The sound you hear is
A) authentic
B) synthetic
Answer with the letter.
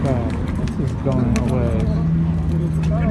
A